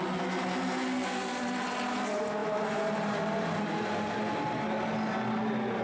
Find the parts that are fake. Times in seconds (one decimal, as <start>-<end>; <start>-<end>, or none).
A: 2.4-3.7